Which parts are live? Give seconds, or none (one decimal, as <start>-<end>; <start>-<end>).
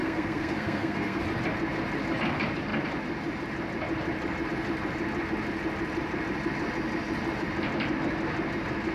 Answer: 1.2-8.9